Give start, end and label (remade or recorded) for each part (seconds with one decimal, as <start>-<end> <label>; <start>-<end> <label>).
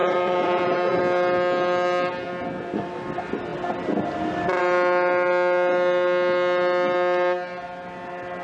0.0-1.0 remade; 1.0-8.4 recorded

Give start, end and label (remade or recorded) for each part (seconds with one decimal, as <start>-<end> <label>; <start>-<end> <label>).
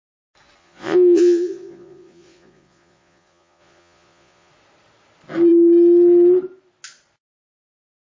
0.0-0.6 recorded; 0.6-4.5 remade; 4.5-8.0 recorded